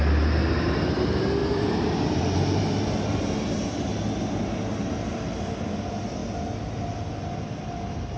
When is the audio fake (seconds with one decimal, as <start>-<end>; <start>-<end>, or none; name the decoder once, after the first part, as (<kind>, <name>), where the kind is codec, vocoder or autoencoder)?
none